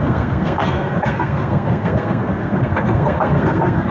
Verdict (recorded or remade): remade